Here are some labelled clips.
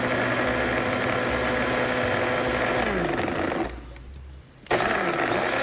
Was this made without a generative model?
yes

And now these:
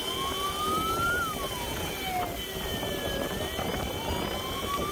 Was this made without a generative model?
yes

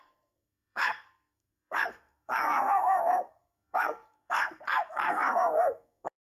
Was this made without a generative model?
no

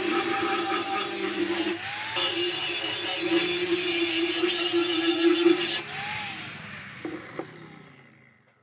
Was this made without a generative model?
yes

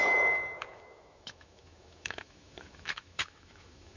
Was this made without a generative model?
no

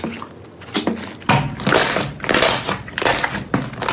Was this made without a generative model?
yes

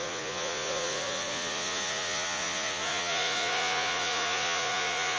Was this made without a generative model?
no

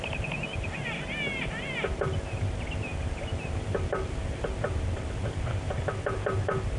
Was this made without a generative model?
yes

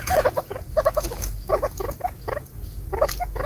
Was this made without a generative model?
no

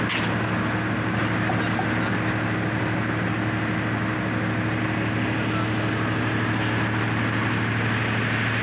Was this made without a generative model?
yes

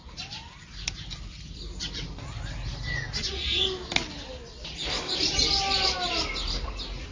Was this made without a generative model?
yes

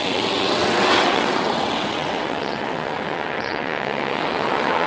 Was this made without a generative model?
no